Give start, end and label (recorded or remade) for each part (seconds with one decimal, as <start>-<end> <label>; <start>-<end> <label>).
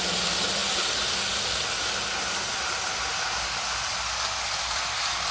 0.0-5.3 recorded